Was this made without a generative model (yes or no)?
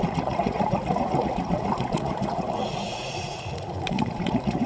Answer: no